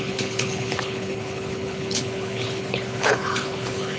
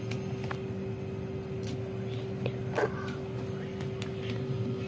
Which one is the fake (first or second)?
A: first